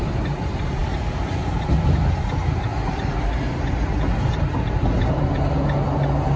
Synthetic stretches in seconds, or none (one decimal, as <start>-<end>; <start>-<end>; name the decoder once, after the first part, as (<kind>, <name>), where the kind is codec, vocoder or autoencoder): none